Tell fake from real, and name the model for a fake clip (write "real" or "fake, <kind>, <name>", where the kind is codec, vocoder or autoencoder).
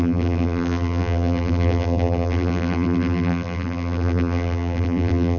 fake, vocoder, BigVGAN v2